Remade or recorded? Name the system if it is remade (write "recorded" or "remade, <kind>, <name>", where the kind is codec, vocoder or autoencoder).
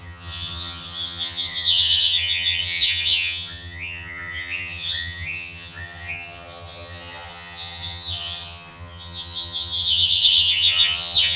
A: remade, vocoder, HiFi-GAN